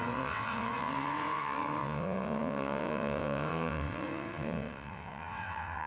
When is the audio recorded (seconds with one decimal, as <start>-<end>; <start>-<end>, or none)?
none